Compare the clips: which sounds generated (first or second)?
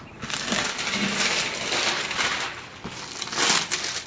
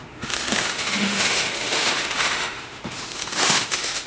second